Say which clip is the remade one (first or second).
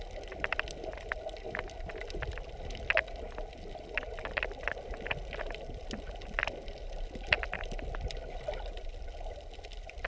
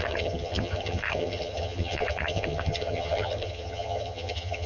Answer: second